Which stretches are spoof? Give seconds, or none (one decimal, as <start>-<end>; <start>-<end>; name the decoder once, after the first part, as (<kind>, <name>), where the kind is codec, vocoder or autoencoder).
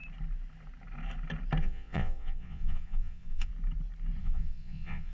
1.6-3.5 (vocoder, Vocos); 4.2-5.1